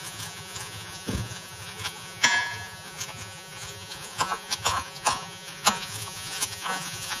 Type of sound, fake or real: fake